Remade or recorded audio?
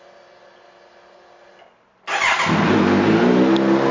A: recorded